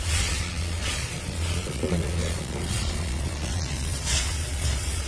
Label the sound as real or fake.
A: fake